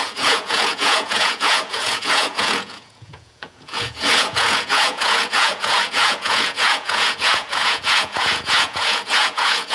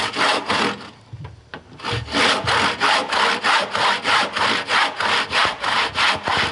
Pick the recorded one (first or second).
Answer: second